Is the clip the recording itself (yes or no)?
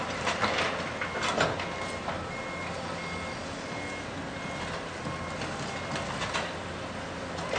yes